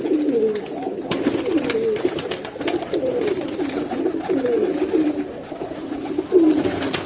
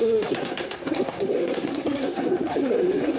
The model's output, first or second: second